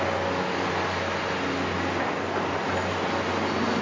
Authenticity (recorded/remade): recorded